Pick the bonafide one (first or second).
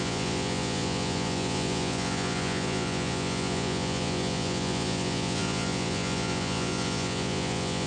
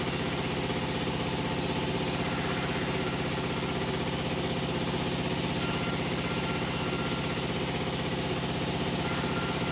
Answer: second